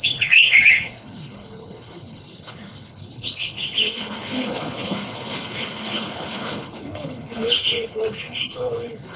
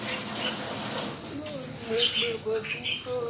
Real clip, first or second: second